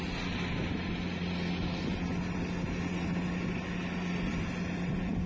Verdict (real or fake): real